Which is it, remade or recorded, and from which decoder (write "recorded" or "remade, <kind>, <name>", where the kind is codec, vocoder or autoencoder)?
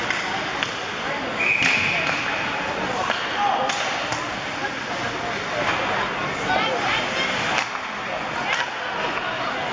recorded